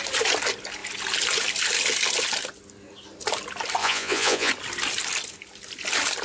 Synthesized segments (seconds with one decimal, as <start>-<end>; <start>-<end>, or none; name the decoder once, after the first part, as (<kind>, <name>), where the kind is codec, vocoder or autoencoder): 3.8-4.5 (vocoder, Vocos)

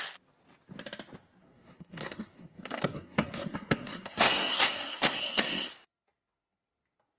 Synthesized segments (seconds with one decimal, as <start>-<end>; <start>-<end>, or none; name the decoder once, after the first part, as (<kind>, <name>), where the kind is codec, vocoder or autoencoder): 1.4-5.7 (codec, SNAC)

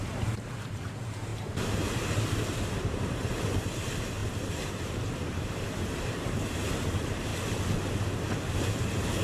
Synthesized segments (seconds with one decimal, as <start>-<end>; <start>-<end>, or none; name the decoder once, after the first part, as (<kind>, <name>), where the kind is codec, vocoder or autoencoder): 0.0-7.3 (vocoder, BigVGAN v2); 8.6-9.2